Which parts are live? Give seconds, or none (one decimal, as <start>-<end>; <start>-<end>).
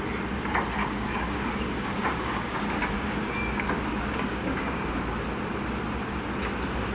0.0-0.8; 4.9-6.9